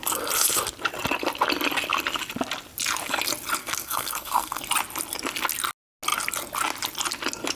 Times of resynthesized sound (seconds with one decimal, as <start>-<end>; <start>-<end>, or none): 3.6-4.6

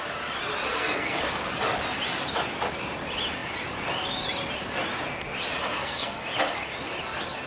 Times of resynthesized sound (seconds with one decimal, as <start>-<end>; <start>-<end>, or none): 0.7-1.2; 5.7-6.2

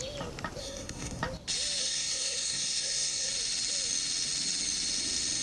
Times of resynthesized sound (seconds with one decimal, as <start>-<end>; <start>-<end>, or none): 0.6-1.2; 1.8-3.3

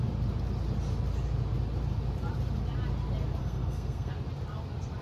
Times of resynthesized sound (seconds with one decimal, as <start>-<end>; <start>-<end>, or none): 3.4-4.1

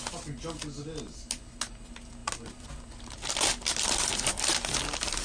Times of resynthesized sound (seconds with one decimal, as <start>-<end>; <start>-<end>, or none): none

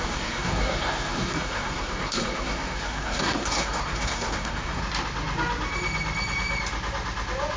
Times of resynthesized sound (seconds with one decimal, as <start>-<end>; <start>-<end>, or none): 0.0-4.8

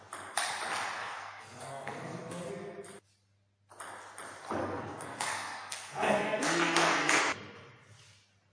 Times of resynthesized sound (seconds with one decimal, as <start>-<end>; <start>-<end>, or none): 1.0-2.5; 4.6-7.2

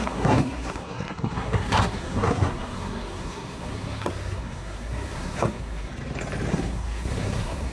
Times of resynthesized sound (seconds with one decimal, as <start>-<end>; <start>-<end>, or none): 0.0-5.9; 6.5-7.7